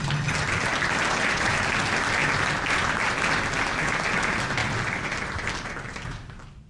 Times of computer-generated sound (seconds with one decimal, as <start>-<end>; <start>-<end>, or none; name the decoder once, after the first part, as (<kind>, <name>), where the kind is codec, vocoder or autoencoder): none